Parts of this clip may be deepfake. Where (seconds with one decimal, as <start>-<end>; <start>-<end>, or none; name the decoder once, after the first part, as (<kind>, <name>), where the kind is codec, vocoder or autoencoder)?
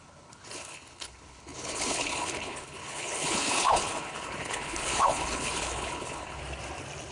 0.0-6.4 (codec, HILCodec)